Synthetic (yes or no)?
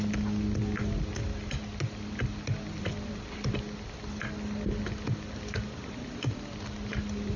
no